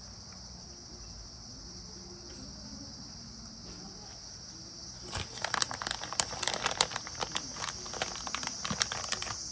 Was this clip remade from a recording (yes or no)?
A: no